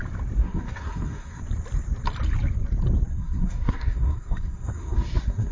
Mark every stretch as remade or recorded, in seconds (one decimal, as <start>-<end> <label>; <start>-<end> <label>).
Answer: 0.0-0.4 recorded; 0.4-1.4 remade; 1.4-3.1 recorded; 3.1-5.5 remade